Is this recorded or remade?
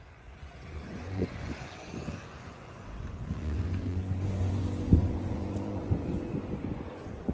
remade